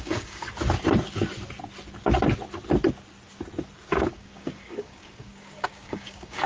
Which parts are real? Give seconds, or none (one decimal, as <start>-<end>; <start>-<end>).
0.4-3.9